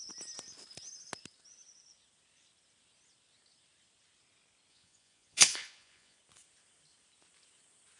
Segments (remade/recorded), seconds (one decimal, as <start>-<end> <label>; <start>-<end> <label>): 0.0-4.7 recorded; 4.7-6.2 remade; 6.2-8.0 recorded